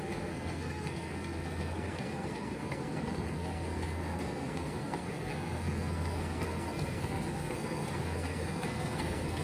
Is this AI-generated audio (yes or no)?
yes